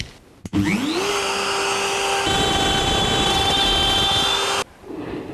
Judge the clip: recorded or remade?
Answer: recorded